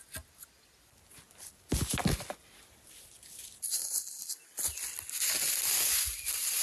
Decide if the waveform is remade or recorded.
recorded